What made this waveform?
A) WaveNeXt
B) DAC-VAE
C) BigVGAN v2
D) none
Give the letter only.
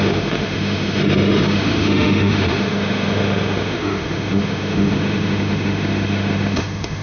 B